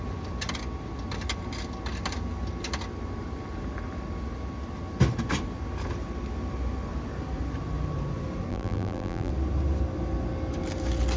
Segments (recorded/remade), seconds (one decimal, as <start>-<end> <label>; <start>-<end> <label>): 0.0-8.5 recorded; 8.5-9.3 remade; 9.3-11.2 recorded